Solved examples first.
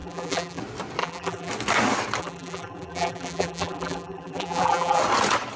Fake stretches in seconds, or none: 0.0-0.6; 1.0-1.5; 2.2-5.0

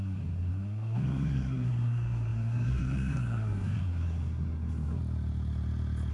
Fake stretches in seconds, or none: 0.0-5.0

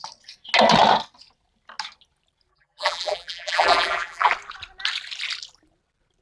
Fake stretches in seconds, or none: 2.5-4.3

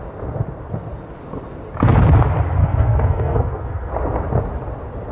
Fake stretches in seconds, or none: 2.6-3.9